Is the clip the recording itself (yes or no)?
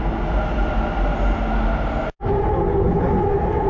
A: yes